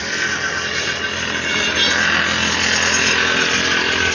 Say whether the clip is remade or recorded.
recorded